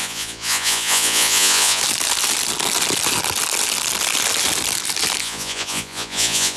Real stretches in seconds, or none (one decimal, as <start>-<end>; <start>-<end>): 1.8-5.2